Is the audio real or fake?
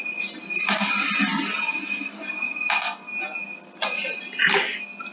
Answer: real